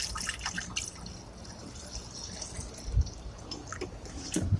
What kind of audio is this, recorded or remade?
recorded